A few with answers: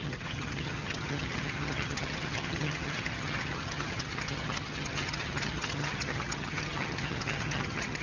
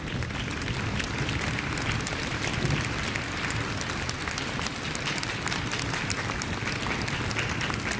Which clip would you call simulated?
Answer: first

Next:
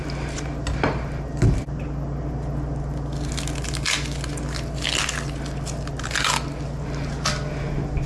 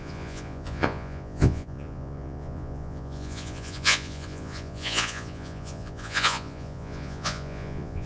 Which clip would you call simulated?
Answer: second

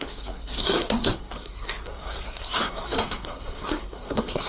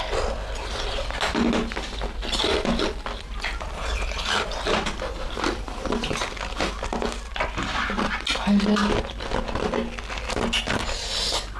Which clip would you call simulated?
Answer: first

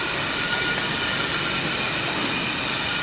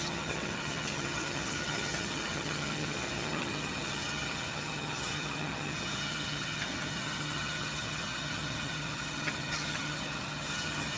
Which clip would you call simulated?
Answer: second